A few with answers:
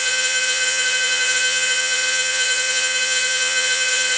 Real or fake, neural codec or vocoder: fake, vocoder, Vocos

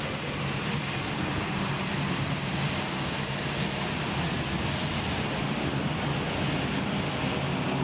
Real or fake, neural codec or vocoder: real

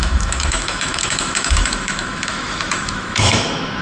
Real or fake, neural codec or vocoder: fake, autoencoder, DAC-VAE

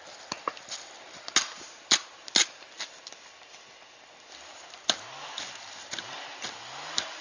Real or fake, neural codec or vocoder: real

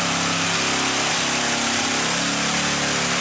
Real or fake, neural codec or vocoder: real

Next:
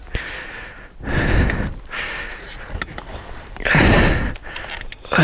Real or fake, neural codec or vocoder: real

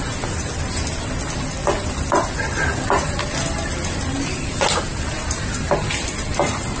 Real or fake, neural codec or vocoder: real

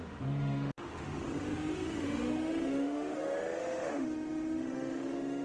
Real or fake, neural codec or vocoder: fake, autoencoder, DAC-VAE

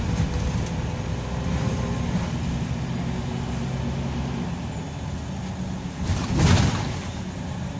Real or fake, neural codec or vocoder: real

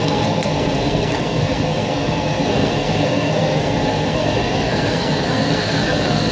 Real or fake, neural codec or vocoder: fake, codec, SNAC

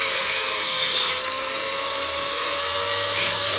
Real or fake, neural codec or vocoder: fake, codec, SNAC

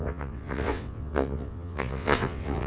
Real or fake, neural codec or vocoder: fake, vocoder, WaveNeXt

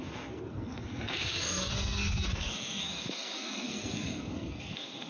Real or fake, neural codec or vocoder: fake, codec, SNAC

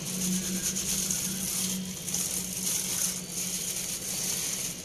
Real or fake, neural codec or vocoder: real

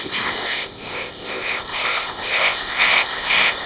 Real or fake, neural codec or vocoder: fake, codec, ZipCodec